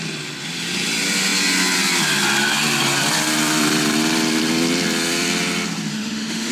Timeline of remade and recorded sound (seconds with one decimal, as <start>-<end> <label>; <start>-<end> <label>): 0.0-5.9 recorded; 5.9-6.5 remade